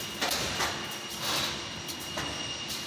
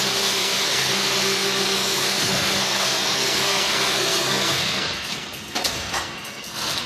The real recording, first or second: first